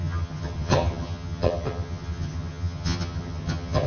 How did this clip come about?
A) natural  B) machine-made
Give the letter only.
B